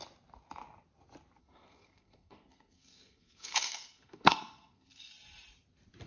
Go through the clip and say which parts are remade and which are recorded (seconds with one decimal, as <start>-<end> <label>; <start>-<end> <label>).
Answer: 0.0-1.4 recorded; 1.4-5.1 remade; 5.1-6.1 recorded